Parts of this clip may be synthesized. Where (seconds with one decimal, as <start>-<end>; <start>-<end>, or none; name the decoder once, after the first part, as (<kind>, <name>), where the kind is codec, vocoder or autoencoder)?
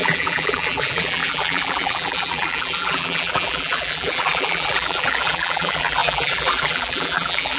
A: 0.0-7.6 (vocoder, BigVGAN v2)